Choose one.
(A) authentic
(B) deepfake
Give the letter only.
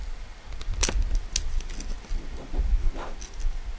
A